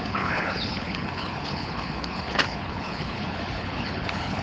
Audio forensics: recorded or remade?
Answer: remade